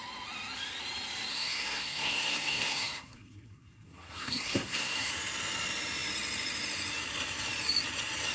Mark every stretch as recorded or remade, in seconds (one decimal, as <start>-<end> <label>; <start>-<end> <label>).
0.0-1.3 recorded; 1.3-5.1 remade; 5.1-8.3 recorded